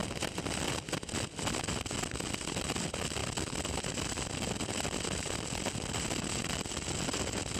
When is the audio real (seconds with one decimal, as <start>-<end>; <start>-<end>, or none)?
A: 0.0-7.6

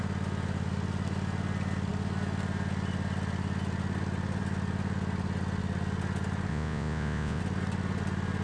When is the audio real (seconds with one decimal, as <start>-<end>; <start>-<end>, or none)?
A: 0.0-6.5; 7.4-8.4

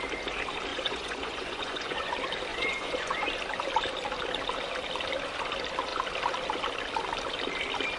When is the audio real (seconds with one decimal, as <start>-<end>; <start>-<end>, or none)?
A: 0.0-0.7; 2.1-2.5; 3.3-8.0

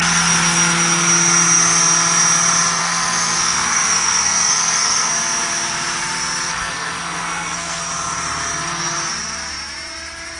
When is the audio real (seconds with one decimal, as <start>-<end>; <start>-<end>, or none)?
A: 0.0-2.8; 5.1-6.5; 7.8-10.4

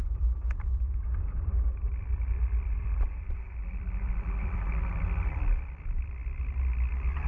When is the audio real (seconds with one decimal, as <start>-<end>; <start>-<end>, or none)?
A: 6.2-7.3

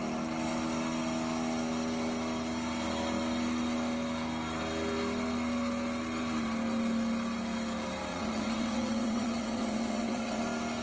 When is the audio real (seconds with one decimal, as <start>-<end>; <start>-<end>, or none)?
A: 0.0-8.1; 10.4-10.8

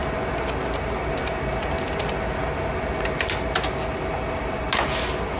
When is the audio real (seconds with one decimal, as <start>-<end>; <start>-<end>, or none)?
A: 0.0-5.4